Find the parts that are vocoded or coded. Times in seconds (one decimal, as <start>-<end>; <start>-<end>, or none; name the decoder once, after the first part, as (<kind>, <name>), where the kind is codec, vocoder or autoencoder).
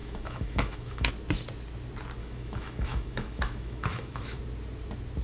0.0-1.1 (autoencoder, DAC-VAE); 2.2-4.4